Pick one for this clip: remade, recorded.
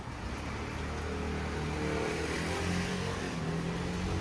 recorded